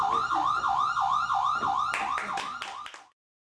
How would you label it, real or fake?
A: real